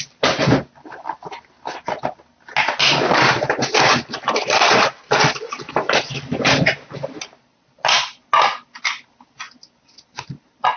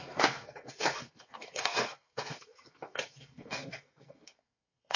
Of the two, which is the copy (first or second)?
second